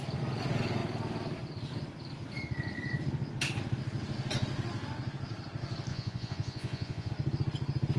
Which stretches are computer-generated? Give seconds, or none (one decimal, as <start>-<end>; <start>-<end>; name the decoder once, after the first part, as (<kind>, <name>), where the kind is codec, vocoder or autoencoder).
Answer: 5.9-7.1 (vocoder, Vocos)